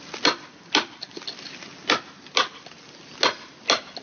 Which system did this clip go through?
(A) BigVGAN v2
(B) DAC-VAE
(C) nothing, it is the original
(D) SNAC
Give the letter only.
C